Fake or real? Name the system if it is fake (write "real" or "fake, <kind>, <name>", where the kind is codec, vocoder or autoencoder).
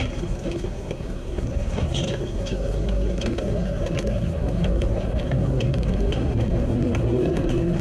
fake, codec, SNAC